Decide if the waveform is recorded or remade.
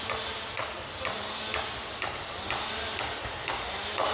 recorded